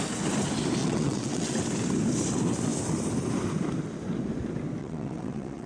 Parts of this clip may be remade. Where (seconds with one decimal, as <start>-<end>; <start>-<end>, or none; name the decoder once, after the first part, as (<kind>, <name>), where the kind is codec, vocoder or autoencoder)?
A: 0.8-1.6 (vocoder, WaveNeXt); 4.8-5.7

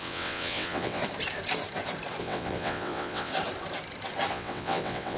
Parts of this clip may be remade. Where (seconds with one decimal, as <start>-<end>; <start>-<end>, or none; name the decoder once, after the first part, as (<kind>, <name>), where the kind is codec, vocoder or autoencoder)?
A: 0.0-1.0 (vocoder, WaveNeXt); 2.2-3.3; 4.3-5.2

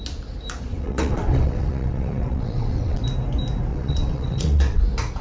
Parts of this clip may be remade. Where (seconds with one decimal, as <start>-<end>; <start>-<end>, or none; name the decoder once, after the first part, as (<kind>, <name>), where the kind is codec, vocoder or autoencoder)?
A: 0.7-3.0 (vocoder, WaveNeXt); 3.7-4.8

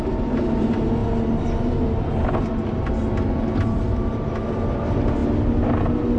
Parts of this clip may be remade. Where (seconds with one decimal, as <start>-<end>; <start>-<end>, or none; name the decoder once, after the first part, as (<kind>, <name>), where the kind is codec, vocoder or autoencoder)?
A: none

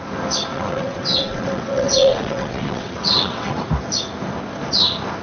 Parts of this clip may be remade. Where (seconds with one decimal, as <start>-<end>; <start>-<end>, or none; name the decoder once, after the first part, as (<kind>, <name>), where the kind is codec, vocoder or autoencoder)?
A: 0.5-3.6 (vocoder, WaveNeXt)

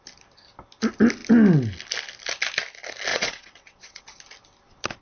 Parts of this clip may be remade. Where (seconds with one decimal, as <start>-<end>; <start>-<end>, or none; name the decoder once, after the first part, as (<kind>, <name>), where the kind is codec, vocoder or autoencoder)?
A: 3.1-4.0 (vocoder, WaveNeXt)

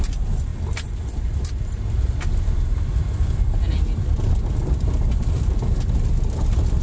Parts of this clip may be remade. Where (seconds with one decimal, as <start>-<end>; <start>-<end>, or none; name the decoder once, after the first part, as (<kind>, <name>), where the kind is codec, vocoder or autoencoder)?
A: none